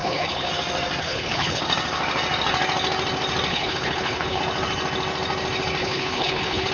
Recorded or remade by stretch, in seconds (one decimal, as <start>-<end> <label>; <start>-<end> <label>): 0.0-0.5 remade; 0.5-1.0 recorded; 1.0-1.6 remade; 1.6-3.5 recorded; 3.5-4.4 remade; 4.4-5.8 recorded; 5.8-6.7 remade